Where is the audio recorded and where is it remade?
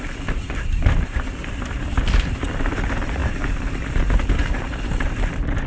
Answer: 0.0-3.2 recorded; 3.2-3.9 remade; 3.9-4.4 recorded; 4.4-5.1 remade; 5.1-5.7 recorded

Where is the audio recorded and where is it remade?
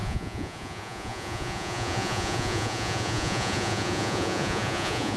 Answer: 0.0-5.2 remade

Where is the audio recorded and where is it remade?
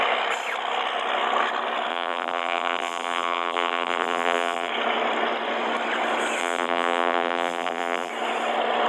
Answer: 0.0-1.9 recorded; 1.9-4.7 remade; 4.7-6.4 recorded; 6.4-8.1 remade; 8.1-8.9 recorded